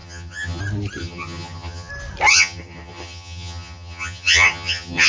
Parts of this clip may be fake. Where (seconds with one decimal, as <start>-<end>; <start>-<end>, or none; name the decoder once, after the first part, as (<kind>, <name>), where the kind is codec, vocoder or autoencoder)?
0.0-0.6 (vocoder, HiFi-GAN); 1.0-1.9; 2.3-5.1